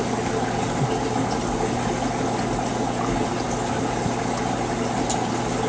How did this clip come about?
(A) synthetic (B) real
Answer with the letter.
B